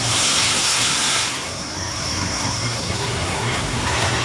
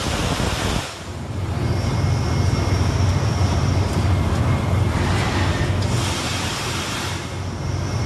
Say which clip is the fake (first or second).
first